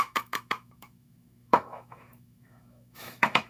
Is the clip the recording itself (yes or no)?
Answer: no